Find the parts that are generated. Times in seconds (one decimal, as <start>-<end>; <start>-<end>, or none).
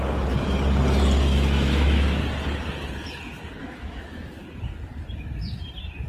1.3-2.2; 3.6-4.3